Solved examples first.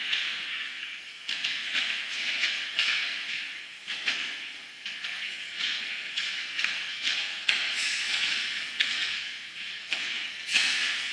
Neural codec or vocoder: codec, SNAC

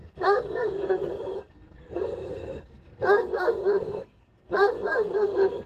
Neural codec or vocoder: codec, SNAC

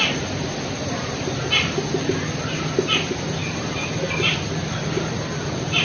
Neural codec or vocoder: none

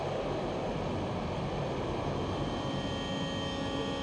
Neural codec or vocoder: none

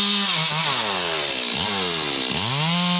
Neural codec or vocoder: none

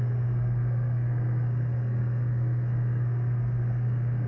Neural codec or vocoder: codec, SNAC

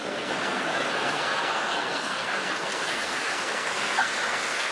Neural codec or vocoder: codec, SNAC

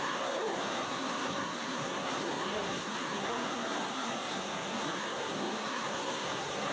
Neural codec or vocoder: codec, SNAC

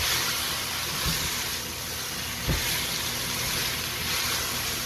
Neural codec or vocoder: none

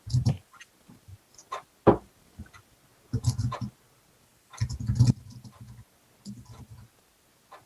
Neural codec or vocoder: none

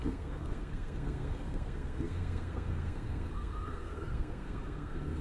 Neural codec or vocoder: codec, SNAC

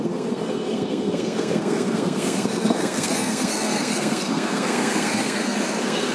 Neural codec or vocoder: codec, SNAC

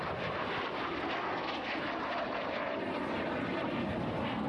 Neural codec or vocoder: none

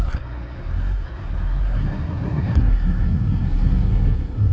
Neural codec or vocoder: codec, SNAC